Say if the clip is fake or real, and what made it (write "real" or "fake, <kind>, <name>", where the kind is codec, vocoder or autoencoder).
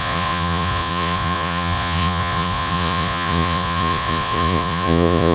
fake, vocoder, Vocos